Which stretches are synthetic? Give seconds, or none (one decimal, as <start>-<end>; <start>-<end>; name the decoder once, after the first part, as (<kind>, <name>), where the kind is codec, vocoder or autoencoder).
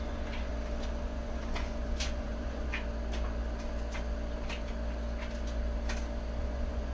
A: 0.0-0.5 (vocoder, Vocos); 1.0-2.7; 6.4-6.9